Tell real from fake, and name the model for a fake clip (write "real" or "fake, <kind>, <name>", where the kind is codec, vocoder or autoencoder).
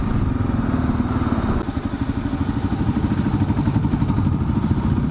real